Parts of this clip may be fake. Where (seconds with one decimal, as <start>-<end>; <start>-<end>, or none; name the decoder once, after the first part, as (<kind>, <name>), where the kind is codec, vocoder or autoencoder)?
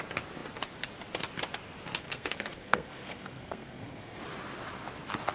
2.0-4.2 (codec, SNAC)